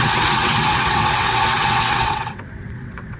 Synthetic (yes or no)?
yes